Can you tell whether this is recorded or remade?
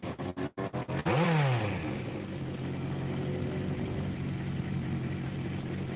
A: recorded